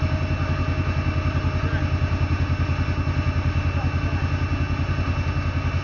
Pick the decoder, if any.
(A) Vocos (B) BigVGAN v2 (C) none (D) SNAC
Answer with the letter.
C